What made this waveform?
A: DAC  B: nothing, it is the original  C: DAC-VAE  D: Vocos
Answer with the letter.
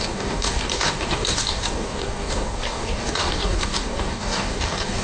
A